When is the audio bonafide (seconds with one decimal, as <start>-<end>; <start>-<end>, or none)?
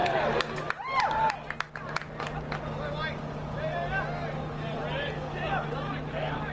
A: 0.0-6.5